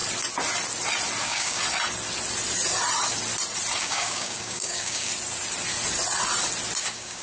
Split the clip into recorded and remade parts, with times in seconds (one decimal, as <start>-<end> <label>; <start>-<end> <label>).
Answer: 0.0-1.2 recorded; 1.2-1.6 remade; 1.6-3.8 recorded; 3.8-5.1 remade; 5.1-6.8 recorded; 6.8-7.2 remade